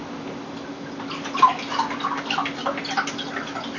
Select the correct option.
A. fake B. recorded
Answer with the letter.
B